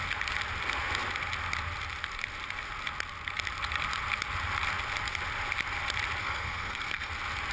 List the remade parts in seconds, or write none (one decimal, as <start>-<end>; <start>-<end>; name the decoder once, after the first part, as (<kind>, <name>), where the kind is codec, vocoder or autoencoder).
6.2-7.1 (codec, SNAC)